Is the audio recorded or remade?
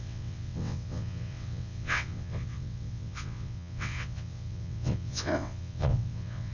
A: remade